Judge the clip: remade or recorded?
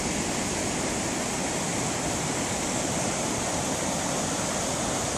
recorded